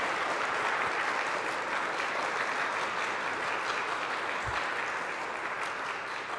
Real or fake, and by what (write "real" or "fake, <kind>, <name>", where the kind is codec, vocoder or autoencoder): real